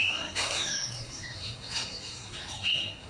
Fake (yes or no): yes